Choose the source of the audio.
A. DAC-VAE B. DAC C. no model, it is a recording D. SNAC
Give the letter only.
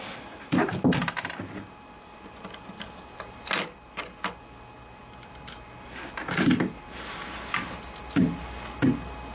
C